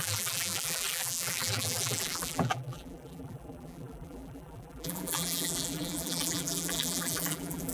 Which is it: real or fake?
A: fake